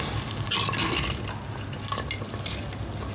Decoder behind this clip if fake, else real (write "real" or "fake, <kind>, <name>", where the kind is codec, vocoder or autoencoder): real